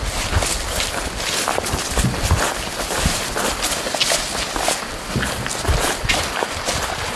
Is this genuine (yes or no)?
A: yes